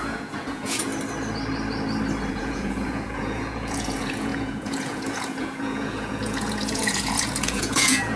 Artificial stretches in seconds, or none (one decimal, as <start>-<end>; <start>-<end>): 0.0-0.9; 2.3-8.2

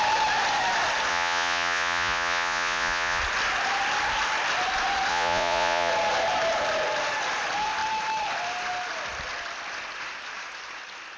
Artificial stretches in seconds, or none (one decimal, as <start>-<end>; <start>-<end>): 1.1-3.2; 5.1-5.9

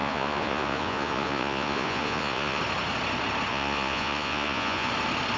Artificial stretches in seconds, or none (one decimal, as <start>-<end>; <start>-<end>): 0.0-2.6; 3.5-4.9

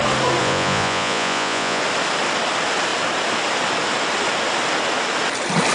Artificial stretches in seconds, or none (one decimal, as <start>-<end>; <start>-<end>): 0.4-1.8